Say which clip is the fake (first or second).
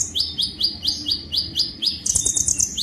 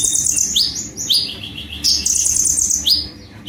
first